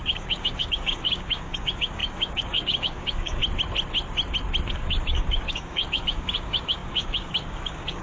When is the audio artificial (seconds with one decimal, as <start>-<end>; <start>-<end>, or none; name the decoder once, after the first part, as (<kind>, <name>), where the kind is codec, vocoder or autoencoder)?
0.0-3.4 (codec, DAC); 4.7-8.0

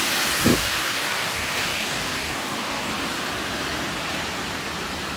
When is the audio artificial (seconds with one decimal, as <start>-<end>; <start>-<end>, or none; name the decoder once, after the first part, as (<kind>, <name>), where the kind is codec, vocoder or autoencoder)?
0.5-2.9 (codec, DAC)

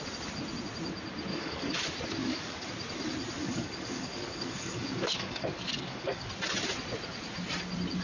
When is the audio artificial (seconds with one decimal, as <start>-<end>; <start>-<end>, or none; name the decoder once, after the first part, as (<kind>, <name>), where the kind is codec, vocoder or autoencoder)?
1.3-1.8 (codec, DAC); 2.2-2.7; 3.4-6.3

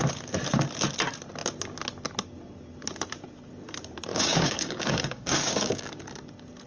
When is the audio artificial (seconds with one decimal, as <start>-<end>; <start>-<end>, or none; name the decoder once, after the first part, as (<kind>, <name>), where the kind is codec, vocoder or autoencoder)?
4.1-5.9 (codec, DAC)